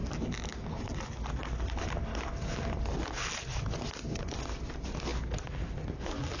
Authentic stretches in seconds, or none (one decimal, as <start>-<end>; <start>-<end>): 0.0-6.4